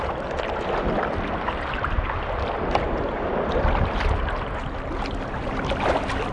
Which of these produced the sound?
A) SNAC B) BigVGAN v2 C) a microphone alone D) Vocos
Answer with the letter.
C